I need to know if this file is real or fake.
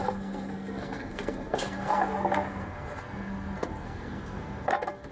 fake